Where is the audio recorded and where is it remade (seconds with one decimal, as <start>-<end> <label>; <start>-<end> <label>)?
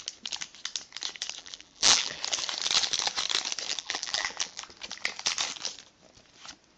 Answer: 0.0-1.4 recorded; 1.4-2.2 remade; 2.2-3.7 recorded; 3.7-4.6 remade; 4.6-6.8 recorded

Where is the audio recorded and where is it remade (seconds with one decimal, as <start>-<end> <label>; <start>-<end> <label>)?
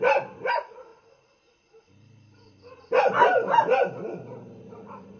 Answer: 0.0-0.9 remade; 0.9-4.0 recorded; 4.0-5.2 remade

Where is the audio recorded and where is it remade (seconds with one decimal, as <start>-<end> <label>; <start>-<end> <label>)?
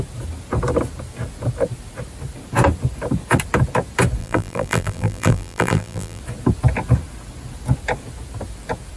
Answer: 0.0-4.2 recorded; 4.2-6.2 remade; 6.2-9.0 recorded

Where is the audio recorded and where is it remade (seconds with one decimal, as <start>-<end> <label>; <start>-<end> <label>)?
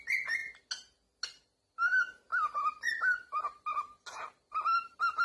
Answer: 0.0-5.2 recorded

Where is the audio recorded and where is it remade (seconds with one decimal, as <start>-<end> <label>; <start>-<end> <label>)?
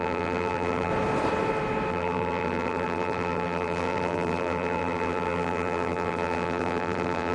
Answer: 0.0-0.9 remade; 0.9-1.9 recorded; 1.9-7.3 remade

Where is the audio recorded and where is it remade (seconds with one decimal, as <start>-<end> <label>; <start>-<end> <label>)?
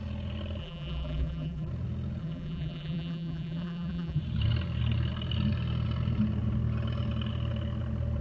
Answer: 0.0-0.6 recorded; 0.6-1.7 remade; 1.7-2.2 recorded; 2.2-4.2 remade; 4.2-8.2 recorded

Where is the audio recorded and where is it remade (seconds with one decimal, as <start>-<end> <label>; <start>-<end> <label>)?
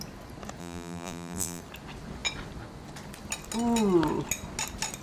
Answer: 0.0-0.6 recorded; 0.6-1.6 remade; 1.6-5.0 recorded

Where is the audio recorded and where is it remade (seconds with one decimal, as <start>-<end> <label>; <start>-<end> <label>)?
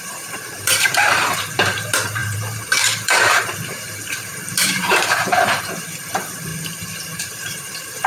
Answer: 0.0-6.5 remade; 6.5-7.2 recorded; 7.2-8.1 remade